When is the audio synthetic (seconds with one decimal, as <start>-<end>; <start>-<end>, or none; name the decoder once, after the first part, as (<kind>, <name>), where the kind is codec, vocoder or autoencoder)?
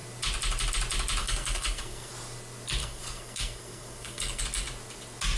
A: 1.2-2.1 (codec, SNAC); 2.8-4.4